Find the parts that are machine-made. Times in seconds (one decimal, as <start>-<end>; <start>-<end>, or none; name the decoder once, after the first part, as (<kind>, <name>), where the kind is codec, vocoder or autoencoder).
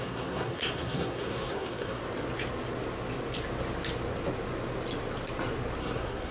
0.0-2.0 (codec, SNAC); 5.8-6.3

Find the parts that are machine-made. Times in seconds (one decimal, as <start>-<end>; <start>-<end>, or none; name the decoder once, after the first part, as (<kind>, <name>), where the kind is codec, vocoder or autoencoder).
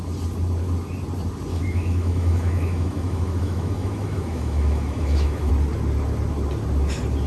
1.5-5.5 (autoencoder, DAC-VAE)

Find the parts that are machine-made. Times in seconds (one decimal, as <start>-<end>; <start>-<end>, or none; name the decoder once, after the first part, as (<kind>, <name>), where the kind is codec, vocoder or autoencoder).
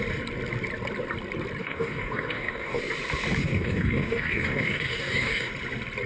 1.6-2.8 (codec, DAC); 3.4-5.5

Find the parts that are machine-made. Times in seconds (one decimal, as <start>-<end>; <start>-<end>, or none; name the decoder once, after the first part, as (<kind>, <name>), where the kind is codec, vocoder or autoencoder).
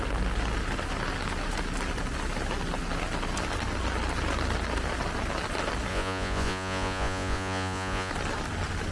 5.9-8.1 (vocoder, Vocos)